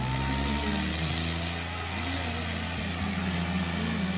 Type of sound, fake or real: real